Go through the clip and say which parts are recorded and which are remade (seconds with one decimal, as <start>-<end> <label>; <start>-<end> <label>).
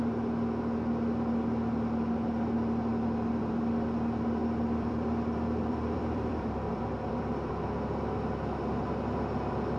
0.0-2.9 recorded; 2.9-3.5 remade; 3.5-4.4 recorded; 4.4-7.5 remade; 7.5-9.8 recorded